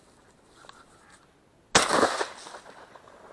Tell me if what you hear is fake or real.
real